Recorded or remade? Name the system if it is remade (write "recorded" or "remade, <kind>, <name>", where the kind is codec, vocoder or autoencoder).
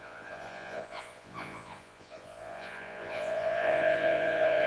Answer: remade, vocoder, Vocos